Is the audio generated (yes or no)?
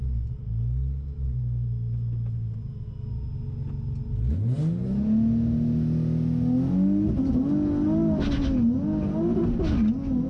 no